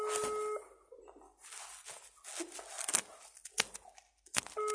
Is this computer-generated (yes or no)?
no